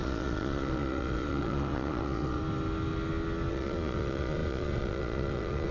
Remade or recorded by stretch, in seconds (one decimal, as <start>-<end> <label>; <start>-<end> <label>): 0.0-2.4 remade; 2.4-3.5 recorded; 3.5-5.7 remade